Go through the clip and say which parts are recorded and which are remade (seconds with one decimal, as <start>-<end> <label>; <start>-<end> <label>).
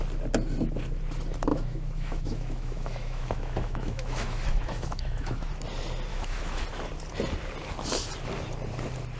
0.0-1.5 recorded; 1.5-5.5 remade; 5.5-6.1 recorded; 6.1-6.6 remade; 6.6-9.2 recorded